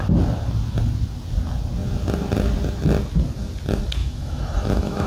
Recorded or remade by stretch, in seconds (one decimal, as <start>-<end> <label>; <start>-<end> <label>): 0.0-4.0 recorded; 4.0-5.1 remade